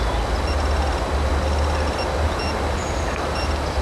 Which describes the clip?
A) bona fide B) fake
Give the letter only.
A